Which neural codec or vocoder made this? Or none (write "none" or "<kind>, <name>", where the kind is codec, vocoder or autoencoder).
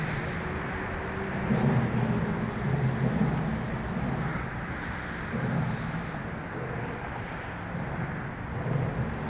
none